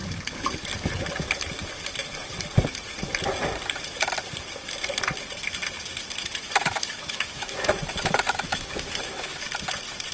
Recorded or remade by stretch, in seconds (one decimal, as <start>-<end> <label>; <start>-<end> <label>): 0.0-6.2 recorded; 6.2-9.4 remade; 9.4-10.1 recorded

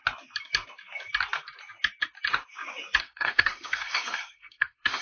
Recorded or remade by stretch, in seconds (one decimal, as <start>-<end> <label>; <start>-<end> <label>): 0.0-3.0 recorded; 3.0-5.0 remade

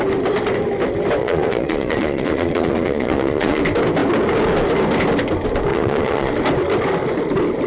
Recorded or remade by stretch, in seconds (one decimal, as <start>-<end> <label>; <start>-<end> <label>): 0.0-1.2 recorded; 1.2-3.6 remade; 3.6-5.7 recorded; 5.7-6.3 remade; 6.3-7.7 recorded

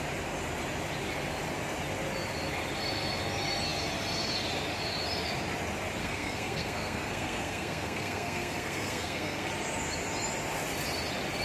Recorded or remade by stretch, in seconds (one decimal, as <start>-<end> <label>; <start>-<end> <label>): 0.0-6.0 recorded; 6.0-9.5 remade; 9.5-11.4 recorded

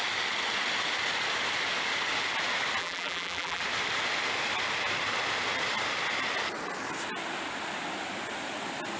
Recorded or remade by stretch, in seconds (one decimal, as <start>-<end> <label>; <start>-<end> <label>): 0.0-2.8 recorded; 2.8-3.6 remade; 3.6-9.0 recorded

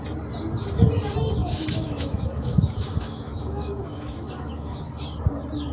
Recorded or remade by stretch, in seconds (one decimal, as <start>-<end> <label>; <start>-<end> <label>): 0.0-1.4 recorded; 1.4-4.8 remade; 4.8-5.7 recorded

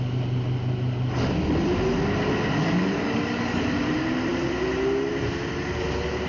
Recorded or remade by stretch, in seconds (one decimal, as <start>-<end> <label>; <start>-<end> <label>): 0.0-2.6 recorded; 2.6-3.6 remade; 3.6-6.3 recorded

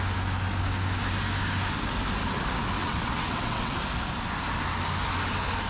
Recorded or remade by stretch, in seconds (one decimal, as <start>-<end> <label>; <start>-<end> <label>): 0.0-2.8 recorded; 2.8-3.7 remade; 3.7-5.7 recorded